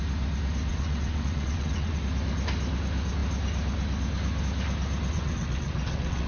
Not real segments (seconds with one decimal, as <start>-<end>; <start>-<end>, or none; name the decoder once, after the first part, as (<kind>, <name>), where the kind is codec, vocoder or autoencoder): 0.7-2.0 (vocoder, WaveNeXt); 5.1-6.3